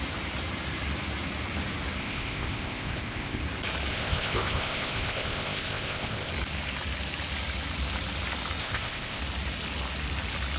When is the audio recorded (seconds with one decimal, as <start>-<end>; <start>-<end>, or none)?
0.0-2.0; 3.4-3.9; 6.3-8.6; 9.2-10.6